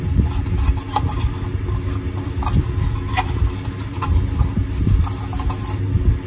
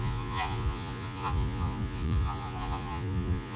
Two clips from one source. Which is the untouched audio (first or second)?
first